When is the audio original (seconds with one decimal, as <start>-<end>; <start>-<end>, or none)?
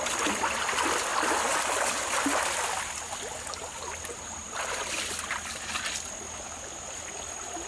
0.0-7.7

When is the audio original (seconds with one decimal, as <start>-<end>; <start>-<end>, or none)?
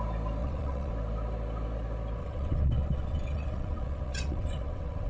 0.0-0.4; 0.9-2.2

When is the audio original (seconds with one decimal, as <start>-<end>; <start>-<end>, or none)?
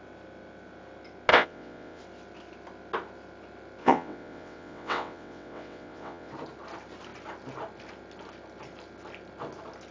0.0-1.3; 2.0-3.8; 6.3-9.9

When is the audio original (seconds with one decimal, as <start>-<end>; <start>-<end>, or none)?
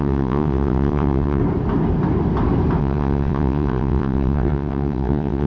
1.4-2.8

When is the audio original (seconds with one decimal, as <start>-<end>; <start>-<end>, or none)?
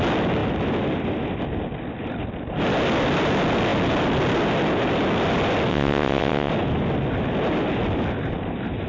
0.0-5.7; 6.5-8.9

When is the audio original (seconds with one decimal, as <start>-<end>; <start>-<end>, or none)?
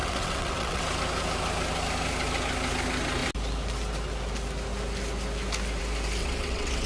0.8-6.2